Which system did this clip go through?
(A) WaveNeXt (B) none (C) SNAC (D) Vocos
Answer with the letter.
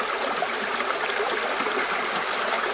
B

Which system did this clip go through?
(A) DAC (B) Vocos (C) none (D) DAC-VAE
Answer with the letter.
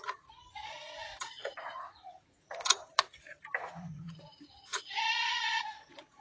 B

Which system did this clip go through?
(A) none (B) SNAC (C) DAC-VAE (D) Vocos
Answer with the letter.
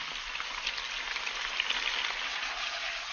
A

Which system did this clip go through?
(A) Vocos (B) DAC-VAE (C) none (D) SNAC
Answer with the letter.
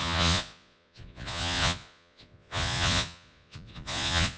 A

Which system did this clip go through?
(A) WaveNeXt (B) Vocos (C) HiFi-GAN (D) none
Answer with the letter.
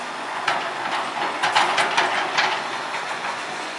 B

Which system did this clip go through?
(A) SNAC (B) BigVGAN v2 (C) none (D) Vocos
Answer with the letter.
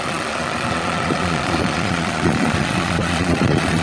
D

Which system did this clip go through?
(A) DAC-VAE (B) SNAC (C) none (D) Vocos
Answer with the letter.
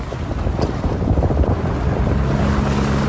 C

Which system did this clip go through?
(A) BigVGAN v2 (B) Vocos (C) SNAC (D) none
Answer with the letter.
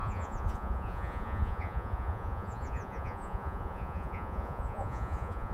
B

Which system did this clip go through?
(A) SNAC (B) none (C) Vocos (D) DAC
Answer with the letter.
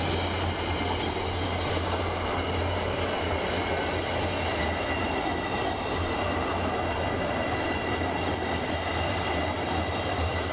B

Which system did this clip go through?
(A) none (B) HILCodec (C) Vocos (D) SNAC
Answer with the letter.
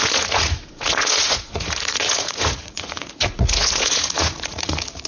C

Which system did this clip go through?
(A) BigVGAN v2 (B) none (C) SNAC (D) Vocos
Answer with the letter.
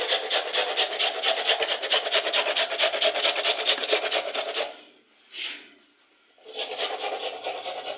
B